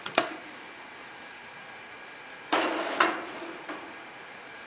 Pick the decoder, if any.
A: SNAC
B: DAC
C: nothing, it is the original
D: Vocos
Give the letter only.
D